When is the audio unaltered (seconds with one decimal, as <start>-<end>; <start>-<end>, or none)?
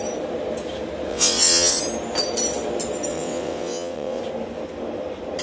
0.0-1.1; 1.8-3.1; 4.2-5.4